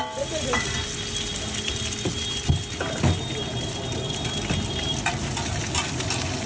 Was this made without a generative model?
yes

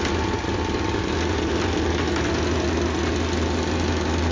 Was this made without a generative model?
yes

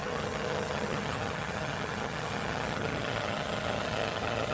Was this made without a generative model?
no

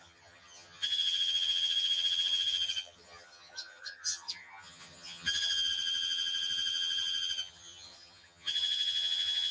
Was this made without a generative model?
no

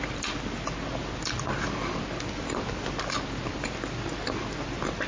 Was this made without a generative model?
yes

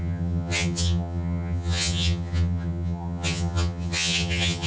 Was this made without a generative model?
no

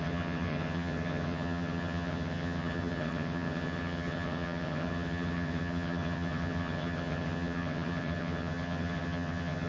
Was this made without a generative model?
no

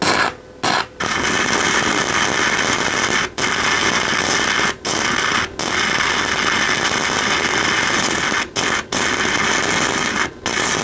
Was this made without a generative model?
yes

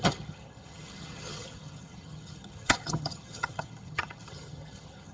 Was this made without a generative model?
no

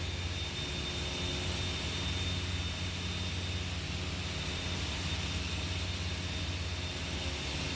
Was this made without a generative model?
yes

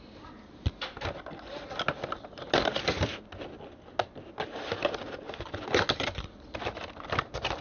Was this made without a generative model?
yes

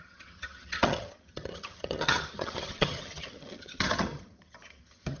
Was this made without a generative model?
no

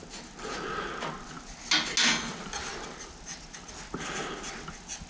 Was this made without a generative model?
yes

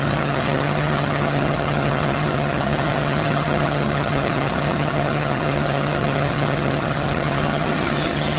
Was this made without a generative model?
no